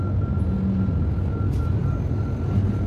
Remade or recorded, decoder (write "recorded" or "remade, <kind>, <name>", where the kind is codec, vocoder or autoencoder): recorded